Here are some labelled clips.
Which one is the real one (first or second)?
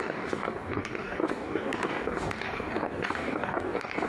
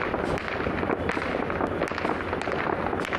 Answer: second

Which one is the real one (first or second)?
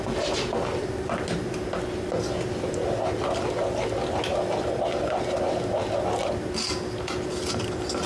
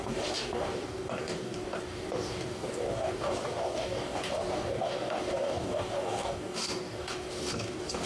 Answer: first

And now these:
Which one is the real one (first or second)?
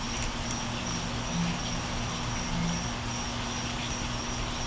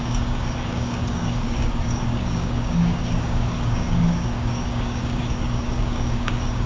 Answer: first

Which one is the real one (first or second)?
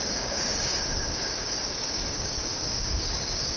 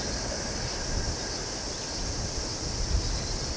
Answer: second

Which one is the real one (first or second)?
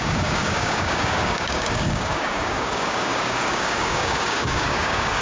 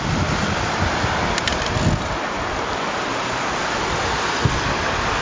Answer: second